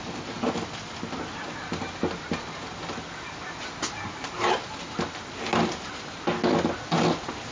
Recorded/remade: recorded